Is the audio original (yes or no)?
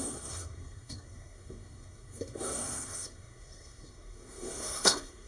no